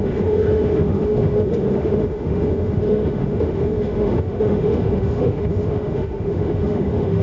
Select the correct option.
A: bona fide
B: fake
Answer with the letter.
B